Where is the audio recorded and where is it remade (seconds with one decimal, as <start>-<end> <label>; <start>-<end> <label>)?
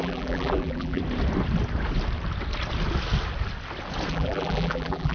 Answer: 0.0-1.0 remade; 1.0-4.1 recorded; 4.1-5.1 remade